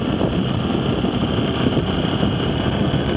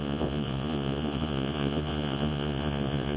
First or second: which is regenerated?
second